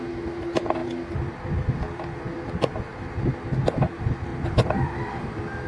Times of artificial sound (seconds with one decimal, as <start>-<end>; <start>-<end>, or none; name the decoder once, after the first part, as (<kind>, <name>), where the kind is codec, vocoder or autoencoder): 4.3-5.7 (vocoder, BigVGAN v2)